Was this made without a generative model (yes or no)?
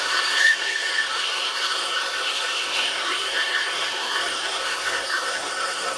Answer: no